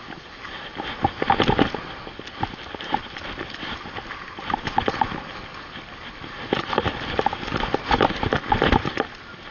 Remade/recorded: recorded